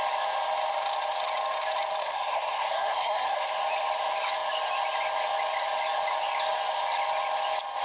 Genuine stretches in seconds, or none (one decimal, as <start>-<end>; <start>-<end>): 0.0-2.0; 3.5-7.8